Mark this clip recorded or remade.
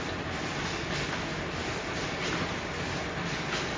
recorded